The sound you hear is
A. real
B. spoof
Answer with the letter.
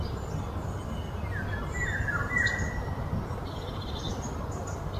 A